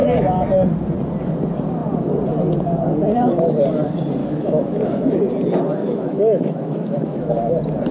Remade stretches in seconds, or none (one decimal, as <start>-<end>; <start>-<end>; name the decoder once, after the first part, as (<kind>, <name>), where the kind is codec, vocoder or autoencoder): 0.0-0.5 (autoencoder, DAC-VAE); 4.2-5.2; 5.8-7.5